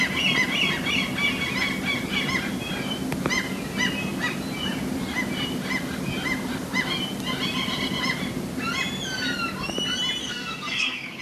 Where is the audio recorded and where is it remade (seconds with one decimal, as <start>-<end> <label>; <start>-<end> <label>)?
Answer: 0.0-10.2 recorded; 10.2-11.2 remade